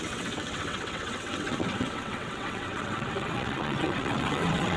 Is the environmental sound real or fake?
fake